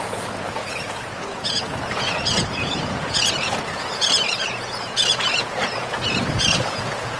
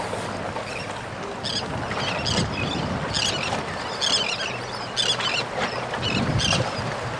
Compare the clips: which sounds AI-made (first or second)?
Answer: first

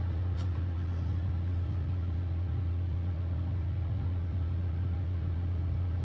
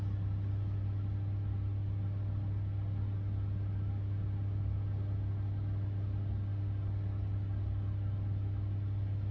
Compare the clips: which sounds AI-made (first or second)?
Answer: first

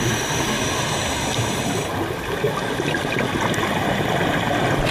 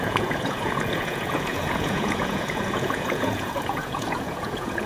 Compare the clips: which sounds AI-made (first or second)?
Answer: second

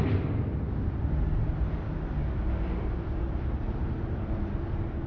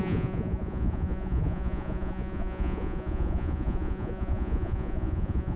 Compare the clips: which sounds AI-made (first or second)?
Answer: second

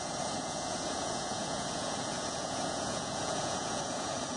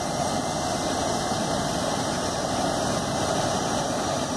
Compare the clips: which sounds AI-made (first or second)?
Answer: first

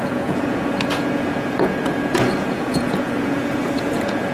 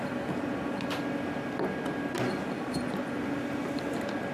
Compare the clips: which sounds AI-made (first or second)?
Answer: first